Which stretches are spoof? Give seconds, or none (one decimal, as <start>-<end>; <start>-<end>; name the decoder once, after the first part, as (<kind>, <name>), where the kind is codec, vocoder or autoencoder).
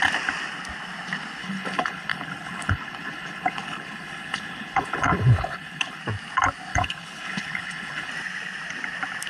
1.4-6.0 (codec, HILCodec); 6.7-8.1